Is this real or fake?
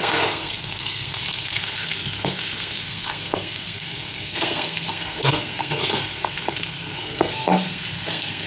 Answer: fake